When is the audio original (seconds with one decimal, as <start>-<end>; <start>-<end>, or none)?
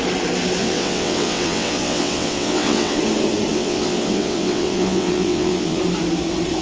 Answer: 0.0-0.6; 3.0-3.5; 5.8-6.6